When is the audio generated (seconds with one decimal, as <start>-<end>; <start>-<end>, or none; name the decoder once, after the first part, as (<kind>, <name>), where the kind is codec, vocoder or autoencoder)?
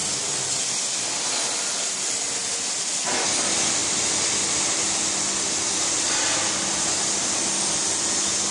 none